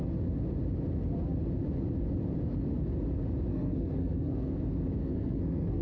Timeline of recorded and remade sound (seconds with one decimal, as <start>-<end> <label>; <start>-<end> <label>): 0.0-3.5 recorded; 3.5-4.6 remade; 4.6-5.0 recorded; 5.0-5.8 remade